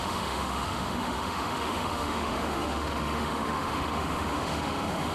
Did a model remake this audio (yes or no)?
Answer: yes